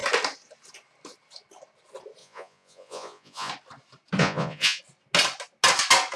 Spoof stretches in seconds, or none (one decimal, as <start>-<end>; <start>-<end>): 2.2-3.5; 4.2-4.8